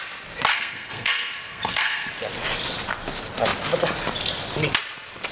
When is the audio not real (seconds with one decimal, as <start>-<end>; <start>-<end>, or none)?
0.5-2.1